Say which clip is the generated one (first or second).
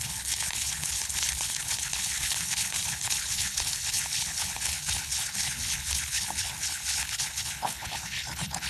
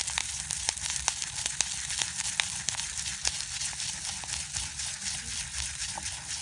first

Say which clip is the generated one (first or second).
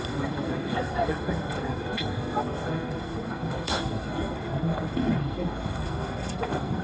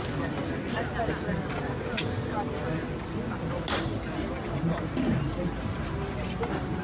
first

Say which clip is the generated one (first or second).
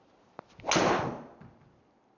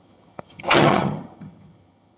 second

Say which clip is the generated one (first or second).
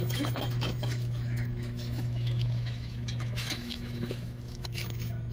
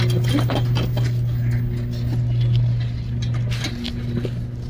first